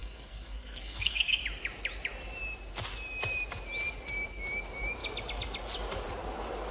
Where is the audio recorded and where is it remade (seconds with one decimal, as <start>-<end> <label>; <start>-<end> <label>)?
0.0-1.4 remade; 1.4-6.7 recorded